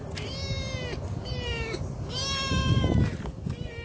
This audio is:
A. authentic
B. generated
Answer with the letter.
A